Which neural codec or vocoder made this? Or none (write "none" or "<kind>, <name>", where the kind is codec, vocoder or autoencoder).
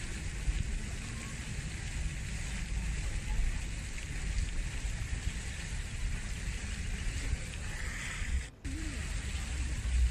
none